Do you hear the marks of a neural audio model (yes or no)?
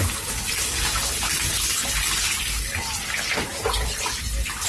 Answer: no